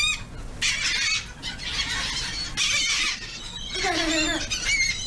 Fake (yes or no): no